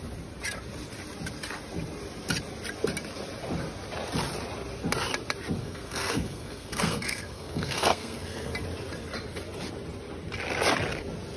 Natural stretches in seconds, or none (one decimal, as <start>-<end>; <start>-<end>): 0.0-5.6; 8.5-11.4